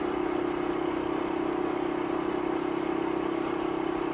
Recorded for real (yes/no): yes